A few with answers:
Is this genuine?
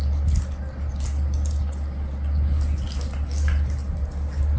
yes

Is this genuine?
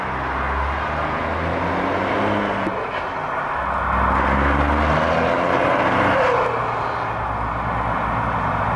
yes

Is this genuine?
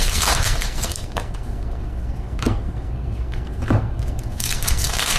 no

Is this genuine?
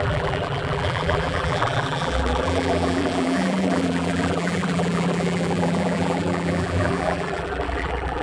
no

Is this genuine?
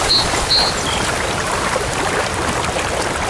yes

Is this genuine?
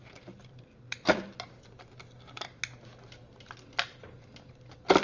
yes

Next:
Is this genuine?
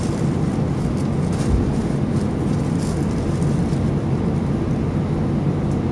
yes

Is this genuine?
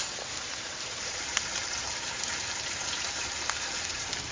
no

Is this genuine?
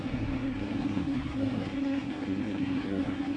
no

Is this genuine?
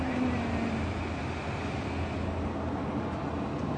yes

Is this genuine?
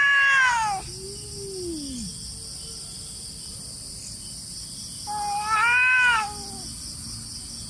yes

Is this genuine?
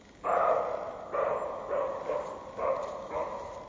yes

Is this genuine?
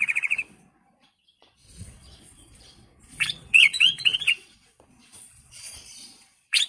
no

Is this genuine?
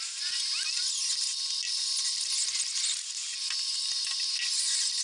yes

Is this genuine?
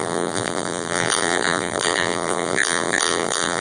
no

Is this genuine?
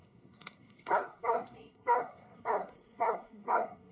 no